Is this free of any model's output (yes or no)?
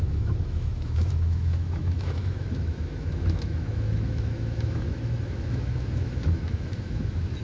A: no